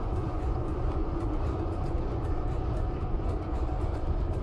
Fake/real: fake